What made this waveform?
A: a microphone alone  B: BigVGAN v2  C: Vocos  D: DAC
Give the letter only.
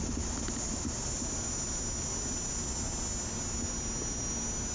A